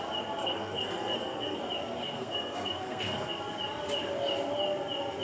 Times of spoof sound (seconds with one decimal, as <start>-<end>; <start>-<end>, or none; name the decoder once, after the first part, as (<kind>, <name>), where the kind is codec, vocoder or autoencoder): 0.4-1.6 (codec, SNAC); 2.0-3.3